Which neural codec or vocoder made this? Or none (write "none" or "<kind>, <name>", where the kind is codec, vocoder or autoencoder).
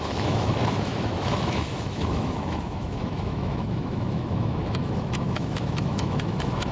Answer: autoencoder, DAC-VAE